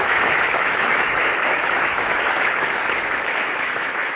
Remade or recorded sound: remade